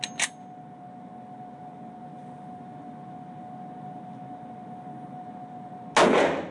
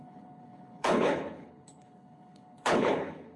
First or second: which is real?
first